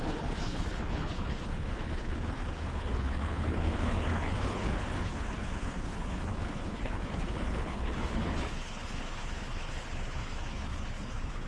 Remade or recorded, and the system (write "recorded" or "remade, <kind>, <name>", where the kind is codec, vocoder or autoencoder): remade, codec, HILCodec